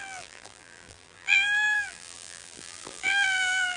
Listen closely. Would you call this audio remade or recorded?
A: remade